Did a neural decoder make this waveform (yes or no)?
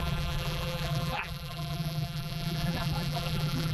yes